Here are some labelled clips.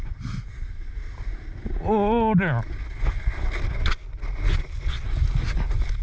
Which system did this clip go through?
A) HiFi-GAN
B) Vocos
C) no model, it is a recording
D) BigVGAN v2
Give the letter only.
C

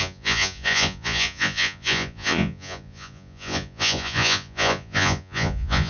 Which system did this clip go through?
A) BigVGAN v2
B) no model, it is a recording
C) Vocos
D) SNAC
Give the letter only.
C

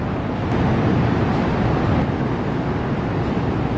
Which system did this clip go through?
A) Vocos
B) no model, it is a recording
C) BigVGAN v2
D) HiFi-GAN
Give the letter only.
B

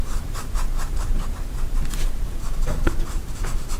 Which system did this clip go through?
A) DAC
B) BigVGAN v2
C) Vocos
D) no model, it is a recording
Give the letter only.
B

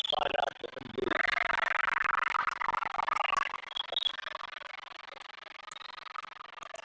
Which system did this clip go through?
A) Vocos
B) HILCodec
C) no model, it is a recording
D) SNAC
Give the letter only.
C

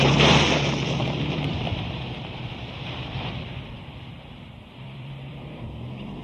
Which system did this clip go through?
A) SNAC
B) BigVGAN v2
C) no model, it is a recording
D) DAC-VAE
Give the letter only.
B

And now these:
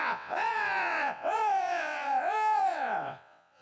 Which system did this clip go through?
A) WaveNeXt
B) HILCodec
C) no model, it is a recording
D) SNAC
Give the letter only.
A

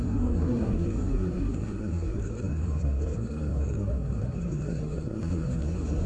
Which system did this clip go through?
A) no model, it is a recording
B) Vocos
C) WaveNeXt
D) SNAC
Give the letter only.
D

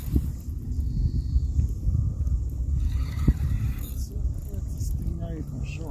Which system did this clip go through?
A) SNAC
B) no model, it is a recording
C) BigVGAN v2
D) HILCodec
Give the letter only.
C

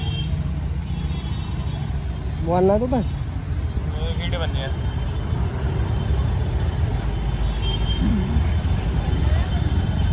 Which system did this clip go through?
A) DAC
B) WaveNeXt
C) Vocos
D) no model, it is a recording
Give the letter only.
D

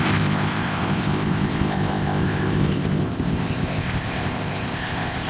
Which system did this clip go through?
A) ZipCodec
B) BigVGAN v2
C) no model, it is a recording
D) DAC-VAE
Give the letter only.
A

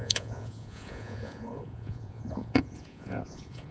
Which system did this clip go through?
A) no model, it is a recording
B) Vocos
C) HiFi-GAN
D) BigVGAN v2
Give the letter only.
B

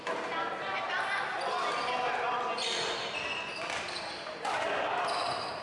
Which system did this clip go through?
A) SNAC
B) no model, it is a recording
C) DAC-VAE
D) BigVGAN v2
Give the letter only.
B